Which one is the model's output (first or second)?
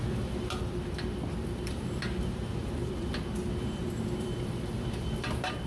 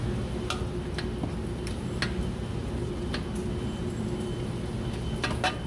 first